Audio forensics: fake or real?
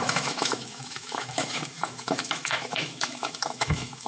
fake